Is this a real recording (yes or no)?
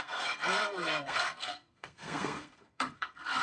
no